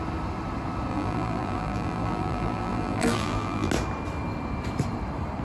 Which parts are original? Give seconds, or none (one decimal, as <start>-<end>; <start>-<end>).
0.0-0.9; 3.7-5.4